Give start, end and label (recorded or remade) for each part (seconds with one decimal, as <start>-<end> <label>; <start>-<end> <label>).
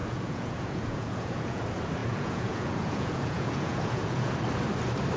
0.0-1.6 remade; 1.6-2.0 recorded; 2.0-4.3 remade; 4.3-5.2 recorded